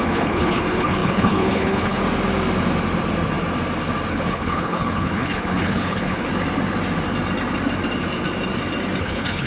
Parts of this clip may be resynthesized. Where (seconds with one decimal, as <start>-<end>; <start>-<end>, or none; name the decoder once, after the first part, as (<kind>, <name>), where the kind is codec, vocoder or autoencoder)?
0.0-2.0 (codec, HILCodec); 4.1-6.3; 9.0-9.5